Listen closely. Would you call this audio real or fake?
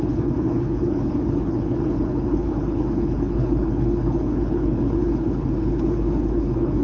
fake